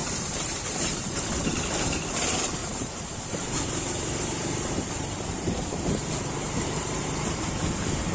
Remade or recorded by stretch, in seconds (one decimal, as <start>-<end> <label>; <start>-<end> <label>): 0.0-1.2 remade; 1.2-2.6 recorded; 2.6-7.4 remade; 7.4-8.1 recorded

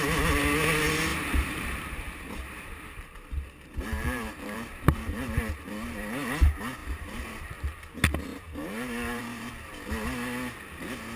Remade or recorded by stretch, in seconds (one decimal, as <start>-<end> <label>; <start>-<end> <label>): 0.0-1.1 recorded; 1.1-5.4 remade; 5.4-6.8 recorded; 6.8-7.8 remade; 7.8-8.3 recorded; 8.3-9.5 remade; 9.5-11.2 recorded

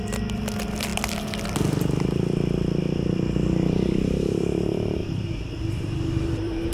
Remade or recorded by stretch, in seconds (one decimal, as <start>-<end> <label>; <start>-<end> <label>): 0.0-5.0 recorded; 5.0-6.7 remade

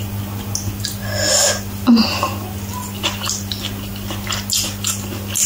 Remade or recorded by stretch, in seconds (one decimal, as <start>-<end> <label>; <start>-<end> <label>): 0.0-5.5 recorded

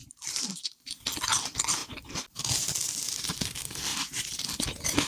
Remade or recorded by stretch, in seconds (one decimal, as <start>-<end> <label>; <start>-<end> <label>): 0.0-0.9 remade; 0.9-3.9 recorded; 3.9-4.6 remade; 4.6-5.1 recorded

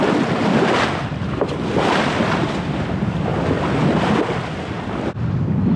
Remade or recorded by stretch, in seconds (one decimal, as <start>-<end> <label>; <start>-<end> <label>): 0.0-3.3 remade; 3.3-5.3 recorded; 5.3-5.8 remade